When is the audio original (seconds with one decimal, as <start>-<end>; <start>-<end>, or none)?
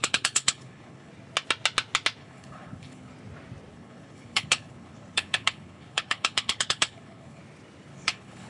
1.1-2.2; 3.1-3.7; 7.4-7.9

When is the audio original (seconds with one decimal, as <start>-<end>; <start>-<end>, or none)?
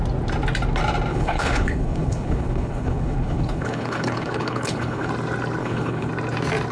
0.0-1.1; 5.1-5.6; 6.1-6.7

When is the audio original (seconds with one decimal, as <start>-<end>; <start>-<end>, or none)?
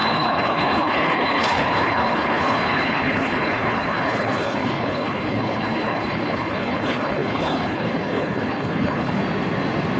9.2-10.0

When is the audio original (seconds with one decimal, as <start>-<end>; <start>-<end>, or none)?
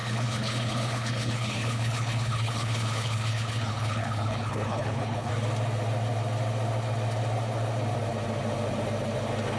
5.3-9.6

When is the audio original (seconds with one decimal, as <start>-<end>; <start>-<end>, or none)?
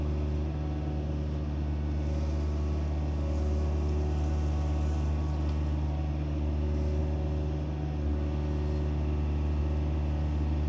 0.0-10.7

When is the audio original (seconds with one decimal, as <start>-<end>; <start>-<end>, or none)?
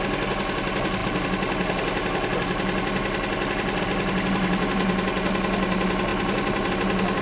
0.0-7.2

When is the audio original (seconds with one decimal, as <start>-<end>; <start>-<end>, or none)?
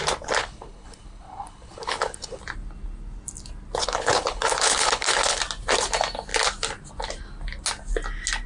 0.0-0.4; 2.4-3.8; 5.4-8.5